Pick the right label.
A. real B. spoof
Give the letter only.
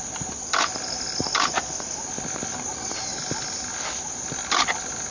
A